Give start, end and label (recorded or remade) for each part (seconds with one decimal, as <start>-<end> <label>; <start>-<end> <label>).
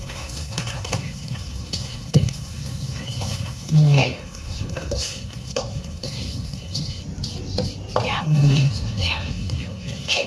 0.0-7.0 remade; 7.0-8.2 recorded; 8.2-10.3 remade